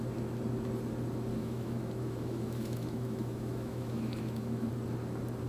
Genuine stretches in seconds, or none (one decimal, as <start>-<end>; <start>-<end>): 0.0-1.4; 4.7-5.5